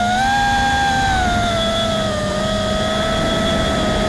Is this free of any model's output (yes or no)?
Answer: yes